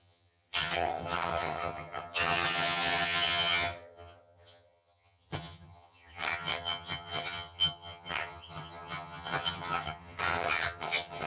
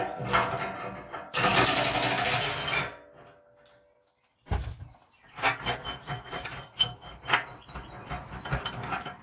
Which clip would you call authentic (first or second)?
second